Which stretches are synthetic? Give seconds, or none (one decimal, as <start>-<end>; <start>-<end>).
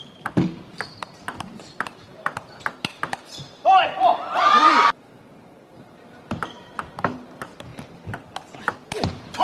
0.0-7.7; 8.9-9.4